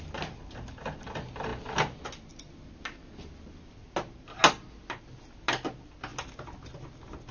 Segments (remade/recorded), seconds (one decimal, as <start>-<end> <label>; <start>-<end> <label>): 0.0-7.3 recorded